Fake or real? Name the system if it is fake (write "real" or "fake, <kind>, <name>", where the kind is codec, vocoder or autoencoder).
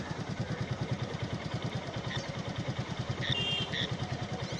fake, vocoder, BigVGAN v2